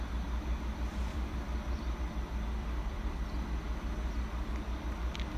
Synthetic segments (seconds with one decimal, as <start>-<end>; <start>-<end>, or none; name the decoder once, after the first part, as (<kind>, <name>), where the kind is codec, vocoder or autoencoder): 1.1-2.0 (vocoder, BigVGAN v2); 2.6-3.1